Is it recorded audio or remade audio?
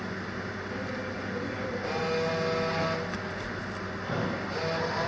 recorded